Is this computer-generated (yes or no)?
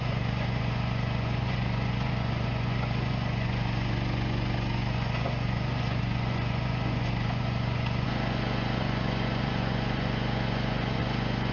yes